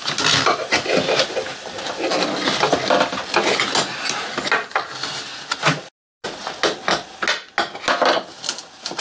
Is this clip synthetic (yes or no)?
no